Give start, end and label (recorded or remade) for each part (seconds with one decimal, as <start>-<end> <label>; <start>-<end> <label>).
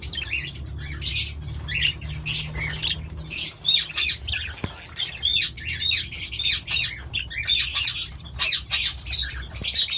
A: 0.0-10.0 recorded